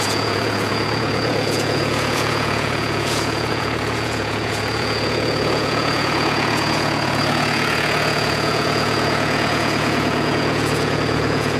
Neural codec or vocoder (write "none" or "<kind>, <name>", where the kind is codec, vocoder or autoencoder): vocoder, Vocos